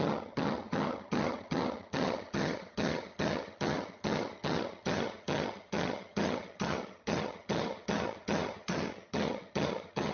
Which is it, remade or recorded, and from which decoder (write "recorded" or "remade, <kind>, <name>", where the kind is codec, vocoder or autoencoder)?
remade, vocoder, HiFi-GAN